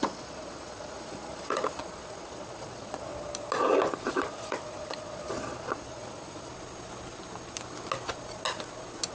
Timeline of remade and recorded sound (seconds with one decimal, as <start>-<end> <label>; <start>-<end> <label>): 0.0-3.1 remade; 3.1-4.1 recorded; 4.1-6.5 remade; 6.5-9.1 recorded